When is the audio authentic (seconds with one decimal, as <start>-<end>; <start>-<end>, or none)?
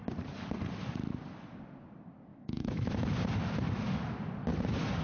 0.0-2.3; 3.1-5.0